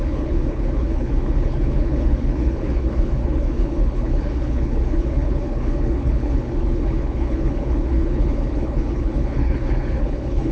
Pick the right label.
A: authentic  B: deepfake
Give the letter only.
B